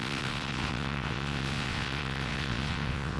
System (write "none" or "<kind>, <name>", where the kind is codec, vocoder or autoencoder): vocoder, WaveNeXt